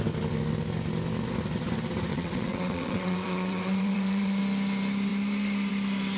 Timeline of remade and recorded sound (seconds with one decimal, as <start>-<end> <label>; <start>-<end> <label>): 0.0-2.1 recorded; 2.1-4.4 remade; 4.4-6.2 recorded